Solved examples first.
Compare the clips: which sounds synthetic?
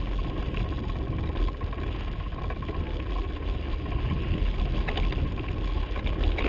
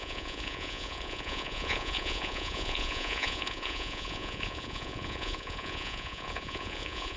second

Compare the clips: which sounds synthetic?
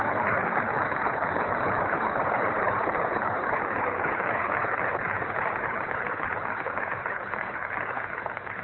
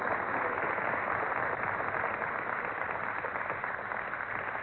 first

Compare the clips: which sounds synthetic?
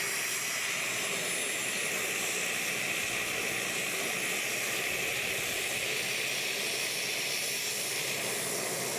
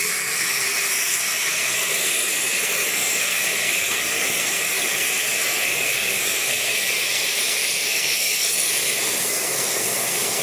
second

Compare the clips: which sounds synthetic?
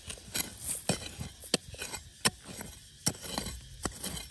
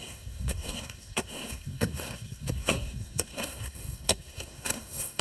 second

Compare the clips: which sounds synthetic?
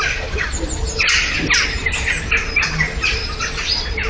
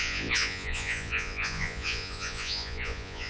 second